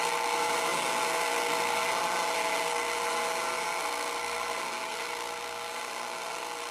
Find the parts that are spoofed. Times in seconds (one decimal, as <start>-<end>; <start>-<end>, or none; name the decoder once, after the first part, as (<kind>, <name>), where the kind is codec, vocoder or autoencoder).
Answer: 0.0-6.7 (codec, SNAC)